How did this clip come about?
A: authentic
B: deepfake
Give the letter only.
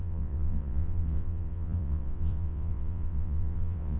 B